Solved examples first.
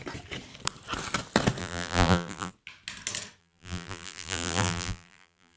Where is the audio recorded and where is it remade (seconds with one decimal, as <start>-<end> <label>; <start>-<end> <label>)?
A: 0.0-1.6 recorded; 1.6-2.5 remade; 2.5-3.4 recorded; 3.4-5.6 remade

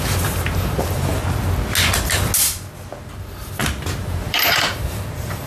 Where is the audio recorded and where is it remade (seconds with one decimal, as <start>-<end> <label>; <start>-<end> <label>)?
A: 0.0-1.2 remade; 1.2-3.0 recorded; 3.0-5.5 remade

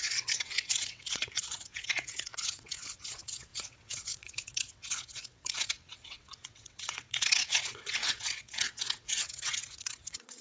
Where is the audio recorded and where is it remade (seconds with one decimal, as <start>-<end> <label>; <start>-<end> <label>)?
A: 0.0-10.4 remade